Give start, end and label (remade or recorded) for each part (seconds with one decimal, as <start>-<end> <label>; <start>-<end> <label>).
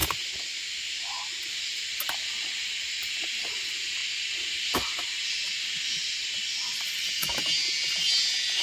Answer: 0.0-1.5 recorded; 1.5-4.0 remade; 4.0-6.5 recorded; 6.5-7.2 remade; 7.2-7.9 recorded; 7.9-8.6 remade